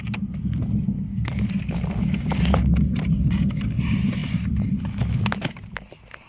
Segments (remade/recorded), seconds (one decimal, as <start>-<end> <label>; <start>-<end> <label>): 0.0-4.2 recorded; 4.2-5.3 remade; 5.3-6.3 recorded